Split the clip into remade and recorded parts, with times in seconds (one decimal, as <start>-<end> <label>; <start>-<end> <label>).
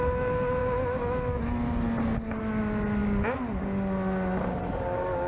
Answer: 0.0-5.3 recorded